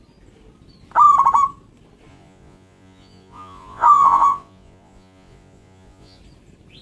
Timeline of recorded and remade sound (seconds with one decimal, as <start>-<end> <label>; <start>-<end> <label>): 0.0-2.1 recorded; 2.1-6.2 remade; 6.2-6.8 recorded